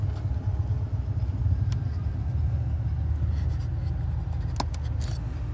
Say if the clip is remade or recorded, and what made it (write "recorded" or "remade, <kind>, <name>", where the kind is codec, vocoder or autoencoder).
recorded